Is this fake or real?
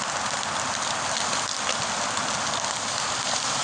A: real